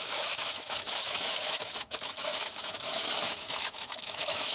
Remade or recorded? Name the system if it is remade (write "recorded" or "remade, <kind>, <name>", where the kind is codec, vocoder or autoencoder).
remade, autoencoder, DAC-VAE